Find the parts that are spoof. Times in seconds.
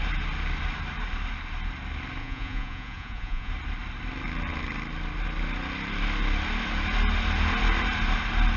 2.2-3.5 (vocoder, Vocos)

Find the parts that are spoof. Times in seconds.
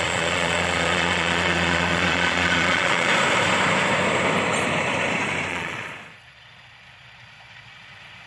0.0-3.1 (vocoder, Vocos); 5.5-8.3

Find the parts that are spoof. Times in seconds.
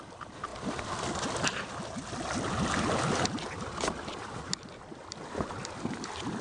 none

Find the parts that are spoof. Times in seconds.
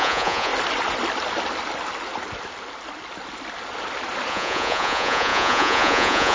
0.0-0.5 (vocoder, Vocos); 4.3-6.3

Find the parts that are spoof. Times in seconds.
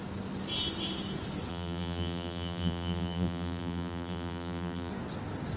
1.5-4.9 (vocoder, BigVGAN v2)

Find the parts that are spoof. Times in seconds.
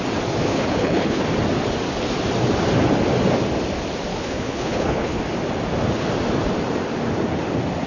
0.5-1.2 (codec, HILCodec); 4.1-5.2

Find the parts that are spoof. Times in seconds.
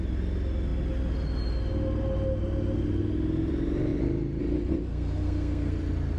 4.9-5.7 (codec, SNAC)